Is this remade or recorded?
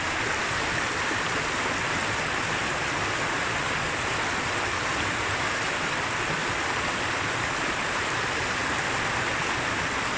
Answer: recorded